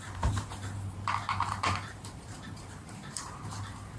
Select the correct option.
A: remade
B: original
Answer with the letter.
A